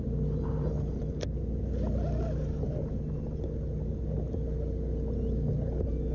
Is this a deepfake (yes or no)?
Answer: no